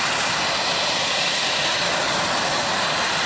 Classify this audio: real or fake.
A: real